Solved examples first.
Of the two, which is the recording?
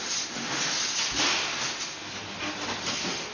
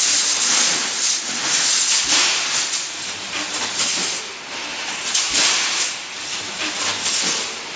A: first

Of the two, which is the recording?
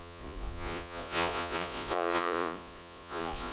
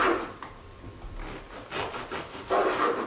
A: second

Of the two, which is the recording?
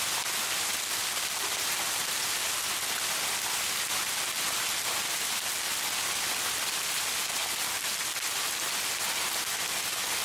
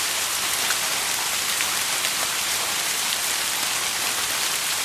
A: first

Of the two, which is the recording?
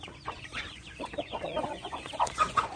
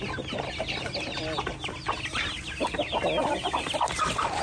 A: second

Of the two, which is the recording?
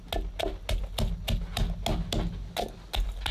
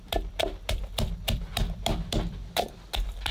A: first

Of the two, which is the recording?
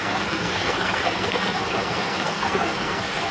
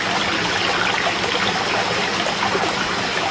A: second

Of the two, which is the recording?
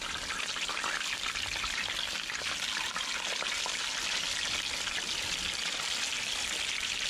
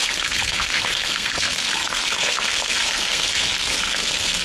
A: first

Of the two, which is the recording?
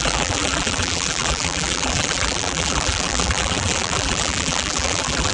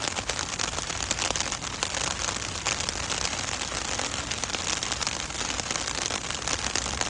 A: second